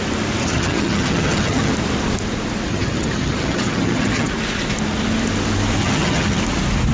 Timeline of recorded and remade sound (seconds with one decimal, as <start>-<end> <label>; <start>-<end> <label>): 0.0-0.4 recorded; 0.4-1.7 remade; 1.7-2.7 recorded; 2.7-4.3 remade; 4.3-5.8 recorded; 5.8-6.4 remade; 6.4-6.9 recorded